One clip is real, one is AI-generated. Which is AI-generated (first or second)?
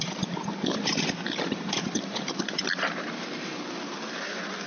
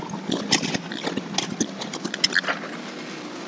first